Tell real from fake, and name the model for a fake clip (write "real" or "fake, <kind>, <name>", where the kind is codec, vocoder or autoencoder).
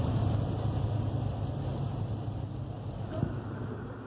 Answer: real